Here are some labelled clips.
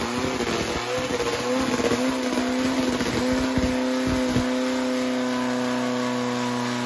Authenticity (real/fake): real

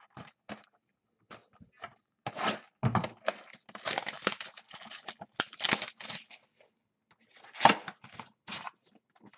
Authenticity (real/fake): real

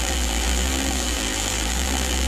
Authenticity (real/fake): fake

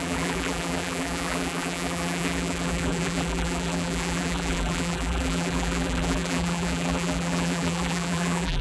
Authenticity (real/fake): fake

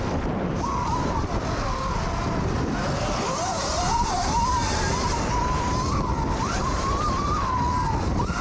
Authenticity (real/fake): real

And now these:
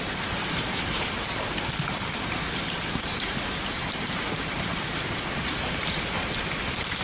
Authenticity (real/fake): fake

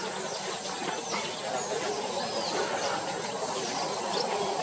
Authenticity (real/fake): real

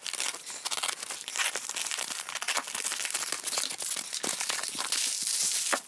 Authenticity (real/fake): real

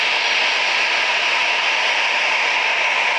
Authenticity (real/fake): real